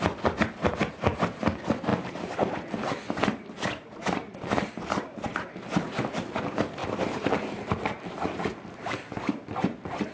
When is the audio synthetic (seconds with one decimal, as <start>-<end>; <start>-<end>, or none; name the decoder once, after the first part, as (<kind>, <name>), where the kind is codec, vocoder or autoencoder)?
none

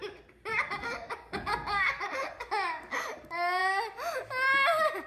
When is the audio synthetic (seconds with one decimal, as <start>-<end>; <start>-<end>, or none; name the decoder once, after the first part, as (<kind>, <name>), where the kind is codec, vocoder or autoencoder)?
0.5-3.6 (codec, DAC)

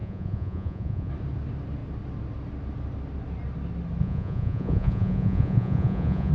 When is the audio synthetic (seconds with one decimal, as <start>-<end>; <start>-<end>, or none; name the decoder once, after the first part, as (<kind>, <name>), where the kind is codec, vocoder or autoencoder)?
0.0-1.1 (vocoder, Vocos); 4.0-6.3

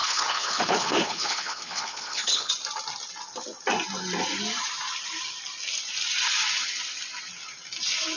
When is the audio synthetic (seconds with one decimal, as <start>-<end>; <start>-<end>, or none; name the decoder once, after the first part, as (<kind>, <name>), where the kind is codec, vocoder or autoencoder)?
0.0-2.5 (codec, HILCodec)

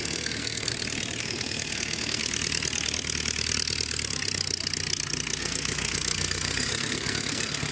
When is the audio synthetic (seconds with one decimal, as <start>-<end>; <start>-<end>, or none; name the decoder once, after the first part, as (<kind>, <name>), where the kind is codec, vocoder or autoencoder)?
0.0-0.7 (codec, SNAC); 1.2-2.2; 5.4-7.7

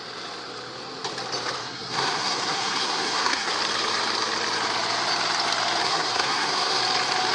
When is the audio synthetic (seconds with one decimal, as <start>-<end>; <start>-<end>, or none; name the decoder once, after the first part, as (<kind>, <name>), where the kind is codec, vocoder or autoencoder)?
1.6-3.5 (codec, SNAC); 5.8-6.8

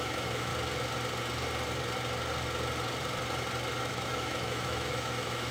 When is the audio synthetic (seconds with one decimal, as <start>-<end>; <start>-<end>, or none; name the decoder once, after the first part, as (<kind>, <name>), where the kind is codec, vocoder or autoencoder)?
0.0-0.5 (autoencoder, DAC-VAE); 3.8-5.5